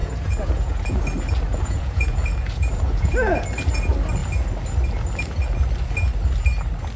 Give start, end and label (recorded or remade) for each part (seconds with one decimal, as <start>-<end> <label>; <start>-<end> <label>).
0.0-1.0 remade; 1.0-1.5 recorded; 1.5-3.1 remade; 3.1-7.0 recorded

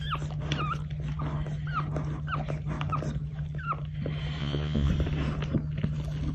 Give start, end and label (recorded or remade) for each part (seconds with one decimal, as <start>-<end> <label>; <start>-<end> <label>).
0.0-4.4 recorded; 4.4-4.9 remade; 4.9-6.3 recorded

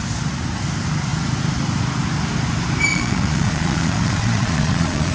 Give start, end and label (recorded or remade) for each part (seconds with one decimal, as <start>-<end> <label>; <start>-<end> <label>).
0.0-2.9 recorded; 2.9-5.1 remade

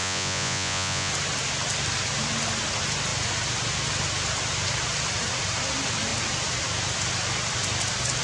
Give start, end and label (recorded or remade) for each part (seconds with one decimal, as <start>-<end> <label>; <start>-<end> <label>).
0.0-1.1 remade; 1.1-8.2 recorded

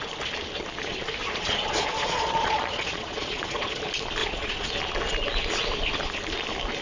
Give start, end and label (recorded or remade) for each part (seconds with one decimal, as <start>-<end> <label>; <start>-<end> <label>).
0.0-1.2 recorded; 1.2-3.8 remade; 3.8-4.2 recorded; 4.2-4.7 remade; 4.7-6.8 recorded

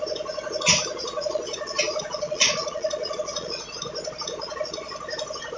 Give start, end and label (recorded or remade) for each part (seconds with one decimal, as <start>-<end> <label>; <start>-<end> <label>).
0.0-0.9 recorded; 0.9-3.6 remade; 3.6-4.4 recorded; 4.4-4.9 remade; 4.9-5.6 recorded